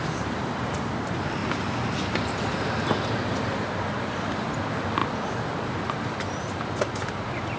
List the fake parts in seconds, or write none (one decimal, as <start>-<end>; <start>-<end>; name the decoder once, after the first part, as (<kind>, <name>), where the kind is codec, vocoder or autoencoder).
0.0-1.4 (vocoder, BigVGAN v2); 2.6-7.6